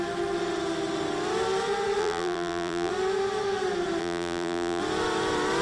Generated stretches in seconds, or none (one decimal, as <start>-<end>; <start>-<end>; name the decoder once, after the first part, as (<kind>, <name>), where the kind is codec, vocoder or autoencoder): 2.0-2.9 (vocoder, BigVGAN v2); 4.0-4.8